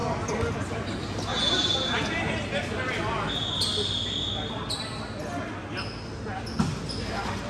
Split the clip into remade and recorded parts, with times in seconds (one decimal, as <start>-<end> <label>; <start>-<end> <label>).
0.0-7.5 recorded